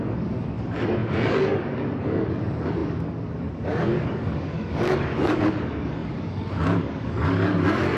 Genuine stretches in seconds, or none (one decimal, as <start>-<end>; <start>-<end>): none